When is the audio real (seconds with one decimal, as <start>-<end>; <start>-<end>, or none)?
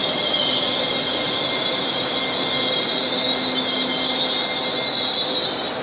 0.0-5.8